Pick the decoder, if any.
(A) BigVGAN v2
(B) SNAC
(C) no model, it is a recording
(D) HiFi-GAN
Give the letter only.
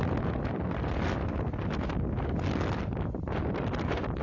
C